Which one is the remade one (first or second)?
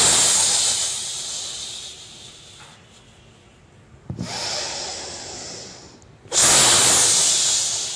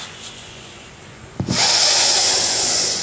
second